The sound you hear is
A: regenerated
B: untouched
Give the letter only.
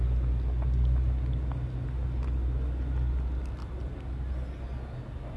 B